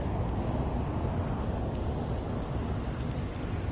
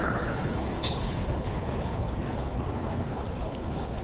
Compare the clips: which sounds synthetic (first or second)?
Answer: second